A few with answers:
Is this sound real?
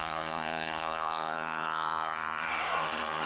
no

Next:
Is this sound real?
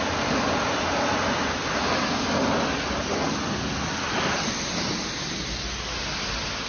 yes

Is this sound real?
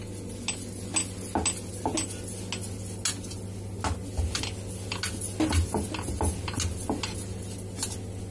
yes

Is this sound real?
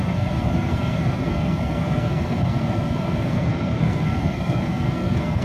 no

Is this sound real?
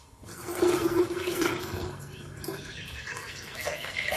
no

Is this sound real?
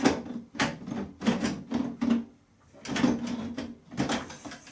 yes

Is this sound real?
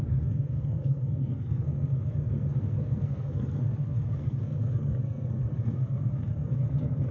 no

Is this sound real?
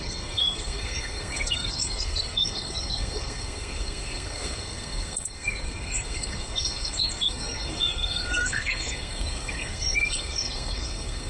no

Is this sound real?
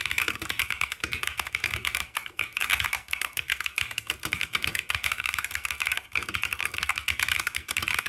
no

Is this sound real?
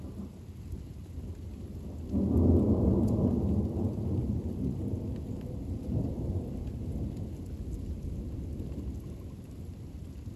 yes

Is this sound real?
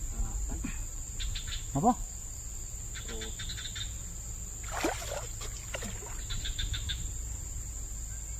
yes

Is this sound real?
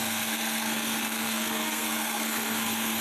no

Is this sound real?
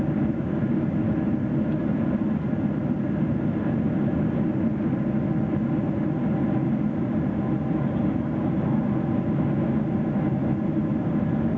yes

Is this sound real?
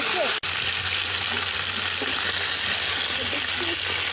yes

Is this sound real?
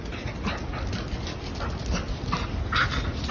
yes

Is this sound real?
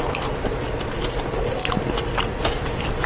yes